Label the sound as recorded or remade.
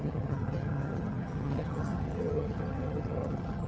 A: remade